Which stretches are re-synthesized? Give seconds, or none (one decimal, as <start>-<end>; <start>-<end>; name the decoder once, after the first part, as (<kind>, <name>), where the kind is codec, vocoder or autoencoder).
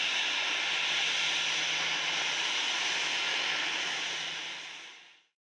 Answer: 3.3-4.0 (autoencoder, DAC-VAE)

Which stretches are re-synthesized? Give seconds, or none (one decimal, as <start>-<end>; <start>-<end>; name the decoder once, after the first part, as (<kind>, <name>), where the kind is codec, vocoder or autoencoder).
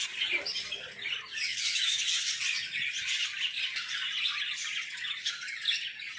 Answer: 1.5-2.3 (autoencoder, DAC-VAE)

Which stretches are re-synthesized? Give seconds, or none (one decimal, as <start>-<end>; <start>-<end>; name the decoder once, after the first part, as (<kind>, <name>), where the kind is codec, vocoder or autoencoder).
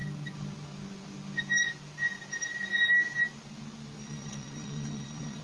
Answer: 4.0-5.4 (vocoder, WaveNeXt)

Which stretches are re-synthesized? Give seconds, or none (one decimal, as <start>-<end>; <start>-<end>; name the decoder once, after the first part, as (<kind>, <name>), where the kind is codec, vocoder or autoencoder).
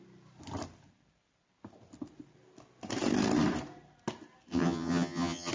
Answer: 4.5-5.5 (vocoder, HiFi-GAN)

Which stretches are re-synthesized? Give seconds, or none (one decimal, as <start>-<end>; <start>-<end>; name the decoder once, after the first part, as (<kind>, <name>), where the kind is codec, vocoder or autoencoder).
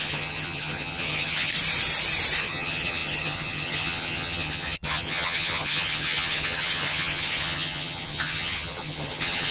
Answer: 0.0-1.5 (vocoder, HiFi-GAN); 2.4-9.5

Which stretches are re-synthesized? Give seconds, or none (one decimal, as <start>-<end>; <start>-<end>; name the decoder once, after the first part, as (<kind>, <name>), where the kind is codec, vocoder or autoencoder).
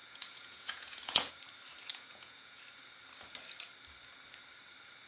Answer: 0.0-1.3 (vocoder, Vocos); 1.9-2.6